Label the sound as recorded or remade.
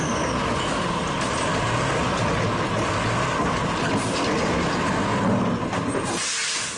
recorded